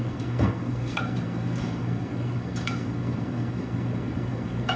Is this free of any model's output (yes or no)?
no